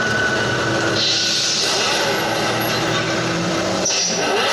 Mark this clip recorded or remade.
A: recorded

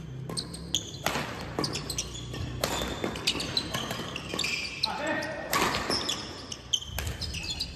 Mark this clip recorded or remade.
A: recorded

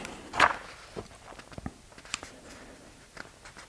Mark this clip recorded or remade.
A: recorded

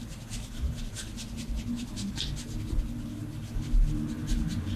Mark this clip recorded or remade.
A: recorded